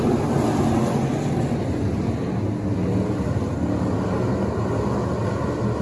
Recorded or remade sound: recorded